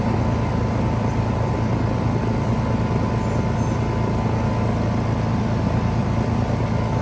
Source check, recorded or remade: recorded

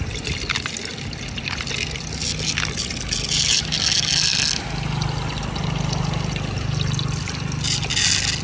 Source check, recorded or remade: recorded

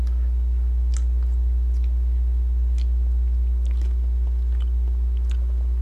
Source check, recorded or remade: recorded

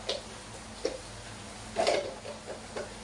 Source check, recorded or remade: recorded